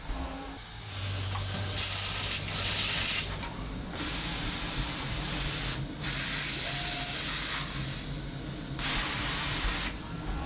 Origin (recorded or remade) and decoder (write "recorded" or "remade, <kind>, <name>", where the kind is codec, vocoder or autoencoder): recorded